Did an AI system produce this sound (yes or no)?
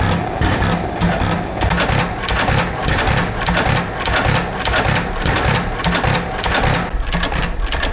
no